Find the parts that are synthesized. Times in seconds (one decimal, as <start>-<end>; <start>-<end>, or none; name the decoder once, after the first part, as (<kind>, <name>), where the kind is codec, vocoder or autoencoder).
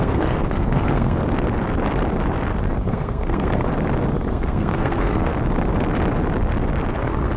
0.0-1.2 (codec, SNAC); 2.8-3.7; 4.3-5.3; 7.0-7.4